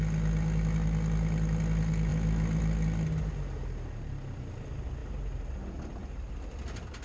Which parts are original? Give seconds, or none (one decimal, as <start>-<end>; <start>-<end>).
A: 0.0-7.0